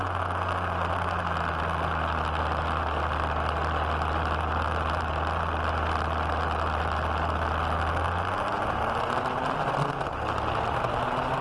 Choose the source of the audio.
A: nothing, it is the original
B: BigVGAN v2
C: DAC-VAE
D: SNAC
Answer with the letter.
A